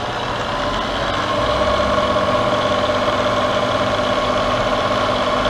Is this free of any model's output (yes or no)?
yes